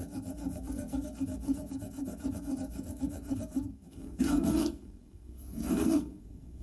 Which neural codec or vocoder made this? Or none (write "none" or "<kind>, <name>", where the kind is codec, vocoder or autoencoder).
codec, SNAC